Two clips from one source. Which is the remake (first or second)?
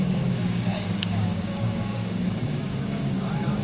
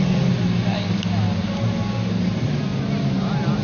first